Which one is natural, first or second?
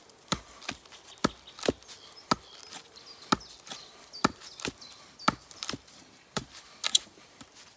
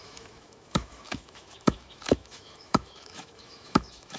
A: first